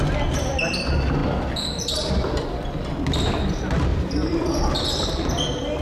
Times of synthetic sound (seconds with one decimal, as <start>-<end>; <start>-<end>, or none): 1.2-2.8; 3.9-5.8